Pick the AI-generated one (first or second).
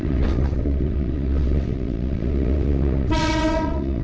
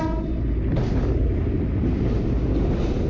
first